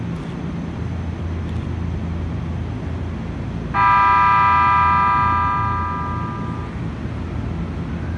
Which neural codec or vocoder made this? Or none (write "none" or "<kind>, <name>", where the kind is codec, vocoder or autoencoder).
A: none